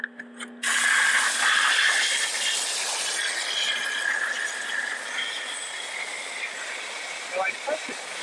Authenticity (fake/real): real